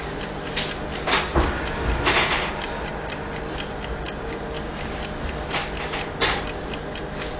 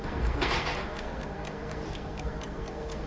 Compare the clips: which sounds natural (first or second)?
first